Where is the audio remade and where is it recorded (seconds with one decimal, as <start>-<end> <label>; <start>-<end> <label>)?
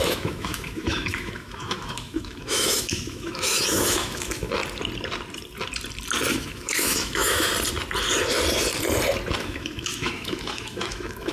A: 0.0-4.6 remade; 4.6-6.3 recorded; 6.3-7.5 remade; 7.5-9.4 recorded; 9.4-11.3 remade